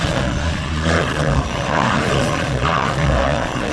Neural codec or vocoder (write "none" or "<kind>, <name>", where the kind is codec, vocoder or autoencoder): vocoder, Vocos